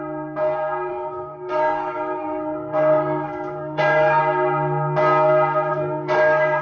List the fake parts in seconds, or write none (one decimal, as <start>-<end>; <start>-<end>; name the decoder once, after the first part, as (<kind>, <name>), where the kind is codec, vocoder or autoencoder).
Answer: 0.9-4.2 (codec, SNAC); 5.7-6.6